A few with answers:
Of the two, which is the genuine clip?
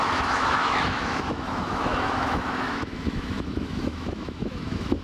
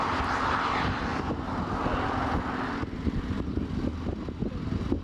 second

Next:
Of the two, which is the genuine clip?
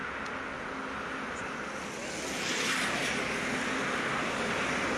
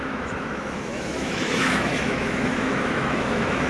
first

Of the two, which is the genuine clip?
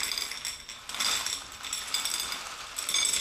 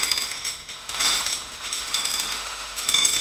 first